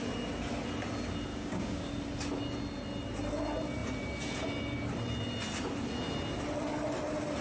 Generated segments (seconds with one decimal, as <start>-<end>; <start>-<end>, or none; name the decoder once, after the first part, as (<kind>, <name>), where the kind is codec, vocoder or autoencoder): 1.3-1.9 (codec, DAC)